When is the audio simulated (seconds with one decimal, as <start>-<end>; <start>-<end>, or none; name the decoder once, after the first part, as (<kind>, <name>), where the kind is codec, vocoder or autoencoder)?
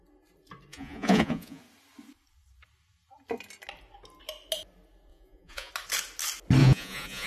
0.7-1.6 (vocoder, Vocos); 5.1-5.7; 6.6-7.3